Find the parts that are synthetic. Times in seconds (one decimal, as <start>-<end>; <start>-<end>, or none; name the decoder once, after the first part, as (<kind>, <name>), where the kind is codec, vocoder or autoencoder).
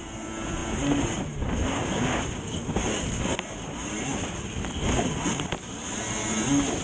none